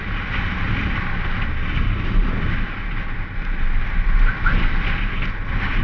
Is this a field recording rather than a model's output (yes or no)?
yes